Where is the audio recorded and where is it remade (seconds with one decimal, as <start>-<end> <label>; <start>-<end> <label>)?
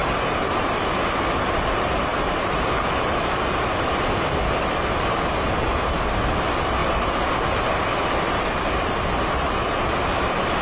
0.0-0.8 remade; 0.8-6.8 recorded; 6.8-7.3 remade; 7.3-10.6 recorded